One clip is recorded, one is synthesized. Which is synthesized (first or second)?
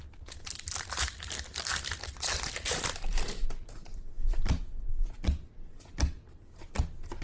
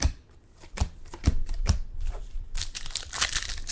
second